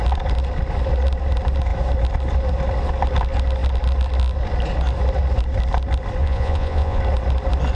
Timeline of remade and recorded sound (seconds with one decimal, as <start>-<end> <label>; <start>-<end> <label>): 0.0-6.2 recorded; 6.2-7.0 remade; 7.0-7.8 recorded